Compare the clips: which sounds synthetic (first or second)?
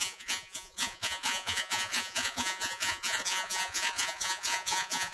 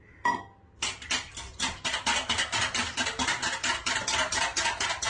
first